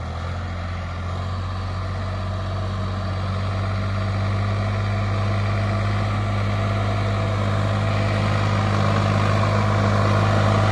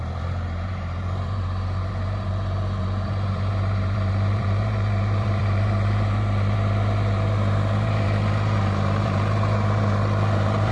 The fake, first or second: second